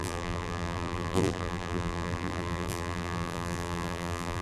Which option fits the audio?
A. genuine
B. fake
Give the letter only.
B